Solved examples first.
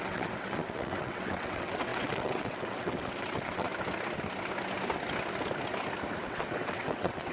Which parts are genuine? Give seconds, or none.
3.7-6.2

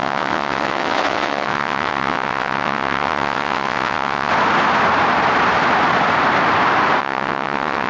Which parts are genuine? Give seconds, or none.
4.3-7.0

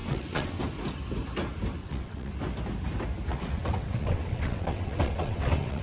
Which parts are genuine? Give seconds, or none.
0.6-1.8; 2.3-3.3

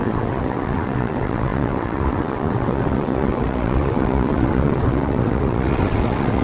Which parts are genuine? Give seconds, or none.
none

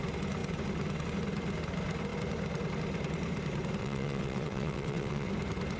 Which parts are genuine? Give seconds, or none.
0.0-3.8; 5.3-5.8

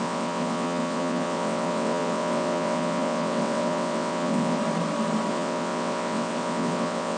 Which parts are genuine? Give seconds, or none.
4.6-5.3

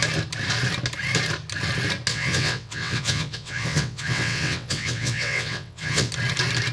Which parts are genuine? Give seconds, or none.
0.0-2.1; 6.1-6.7

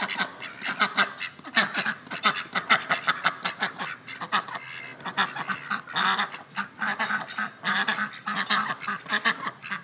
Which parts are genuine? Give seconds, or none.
0.0-9.8